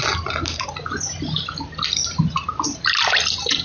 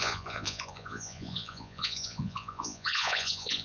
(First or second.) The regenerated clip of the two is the second